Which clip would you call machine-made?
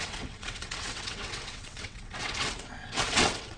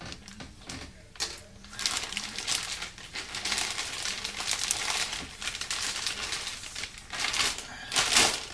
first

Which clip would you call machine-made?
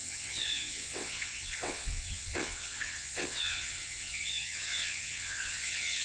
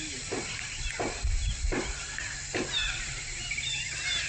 first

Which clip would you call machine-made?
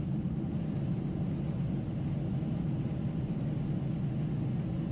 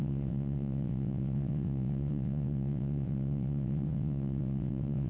second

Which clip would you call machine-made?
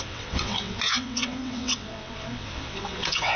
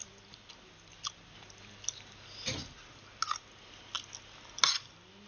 first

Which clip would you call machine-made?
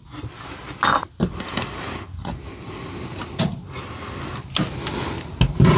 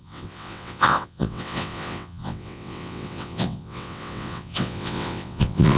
second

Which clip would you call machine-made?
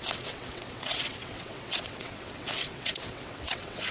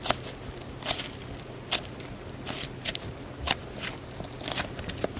first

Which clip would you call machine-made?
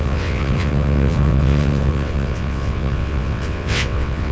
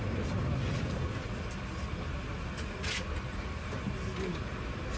first